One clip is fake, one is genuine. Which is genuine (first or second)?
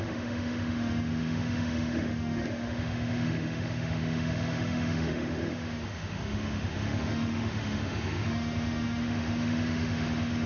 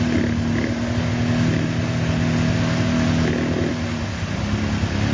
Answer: second